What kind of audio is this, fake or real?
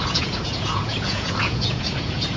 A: fake